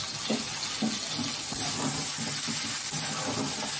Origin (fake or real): real